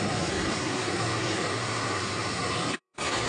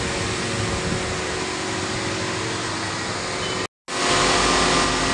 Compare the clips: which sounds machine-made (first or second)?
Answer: first